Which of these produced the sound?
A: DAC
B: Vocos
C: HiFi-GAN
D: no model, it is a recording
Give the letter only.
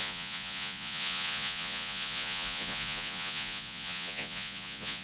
B